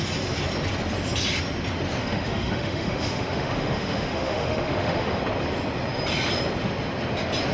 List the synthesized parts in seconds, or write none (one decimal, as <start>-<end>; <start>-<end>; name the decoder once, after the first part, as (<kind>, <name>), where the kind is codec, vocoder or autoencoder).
2.0-5.2 (autoencoder, DAC-VAE)